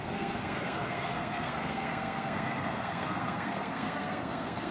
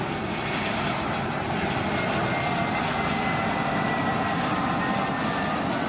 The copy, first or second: first